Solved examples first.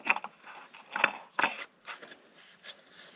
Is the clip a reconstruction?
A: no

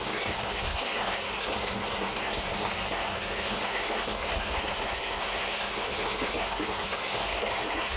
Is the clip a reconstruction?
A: yes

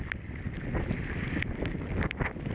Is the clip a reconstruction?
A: no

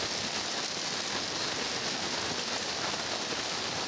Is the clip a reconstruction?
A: no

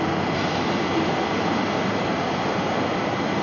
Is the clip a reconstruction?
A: no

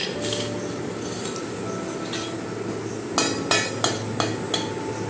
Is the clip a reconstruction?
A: no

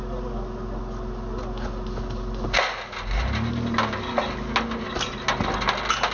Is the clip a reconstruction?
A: no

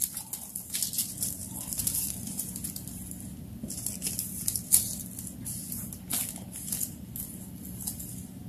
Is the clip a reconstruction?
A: no